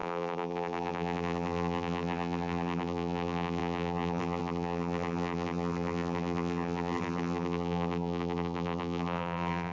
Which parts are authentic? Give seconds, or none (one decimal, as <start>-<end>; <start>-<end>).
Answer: none